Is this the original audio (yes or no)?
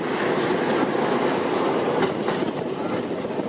yes